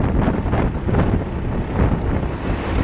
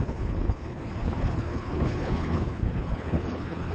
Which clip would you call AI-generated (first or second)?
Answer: second